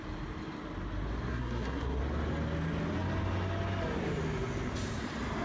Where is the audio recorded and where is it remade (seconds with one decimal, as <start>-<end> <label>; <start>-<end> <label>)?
0.0-1.3 recorded; 1.3-2.0 remade; 2.0-5.4 recorded